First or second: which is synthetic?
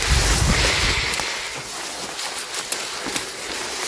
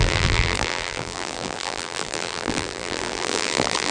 second